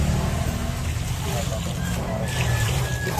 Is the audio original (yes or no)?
yes